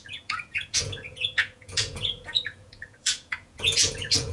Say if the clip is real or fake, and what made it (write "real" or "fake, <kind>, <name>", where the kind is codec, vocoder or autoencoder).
fake, vocoder, Vocos